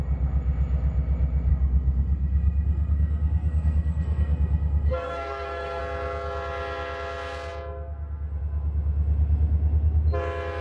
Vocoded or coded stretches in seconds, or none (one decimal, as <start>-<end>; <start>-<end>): 1.5-5.8